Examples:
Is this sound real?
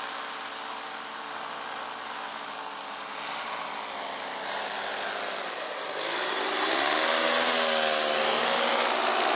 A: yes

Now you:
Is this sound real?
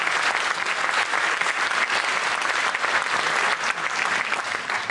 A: yes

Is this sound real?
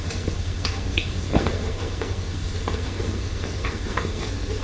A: no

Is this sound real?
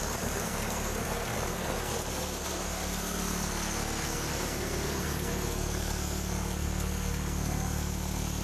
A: no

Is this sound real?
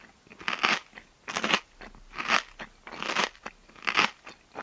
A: yes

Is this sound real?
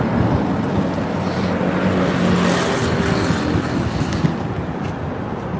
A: yes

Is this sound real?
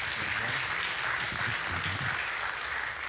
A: yes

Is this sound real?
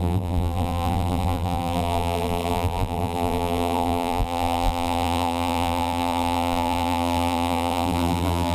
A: no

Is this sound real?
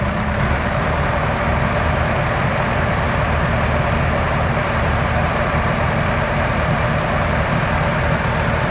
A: no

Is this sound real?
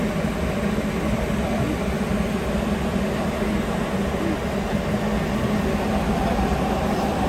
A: yes